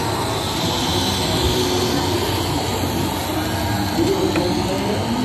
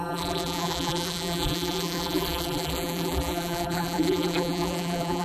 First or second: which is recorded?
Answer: first